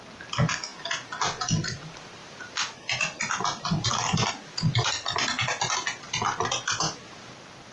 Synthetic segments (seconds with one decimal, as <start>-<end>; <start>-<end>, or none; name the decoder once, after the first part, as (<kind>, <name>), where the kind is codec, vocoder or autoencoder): 2.2-4.3 (vocoder, BigVGAN v2)